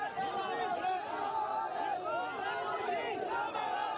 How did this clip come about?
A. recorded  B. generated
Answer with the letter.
A